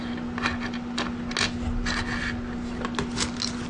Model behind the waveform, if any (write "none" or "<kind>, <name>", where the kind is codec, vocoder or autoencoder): none